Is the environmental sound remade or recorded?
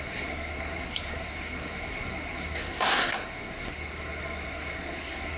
remade